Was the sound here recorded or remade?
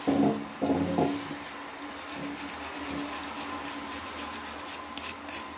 recorded